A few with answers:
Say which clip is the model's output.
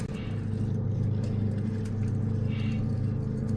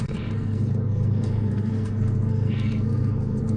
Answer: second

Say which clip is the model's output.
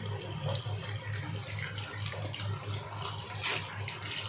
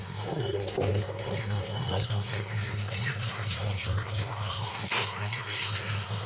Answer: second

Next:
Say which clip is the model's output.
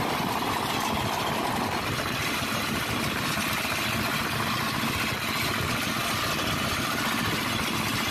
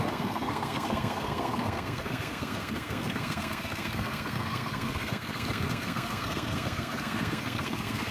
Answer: second